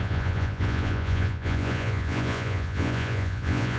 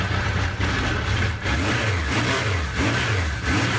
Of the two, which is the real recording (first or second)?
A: second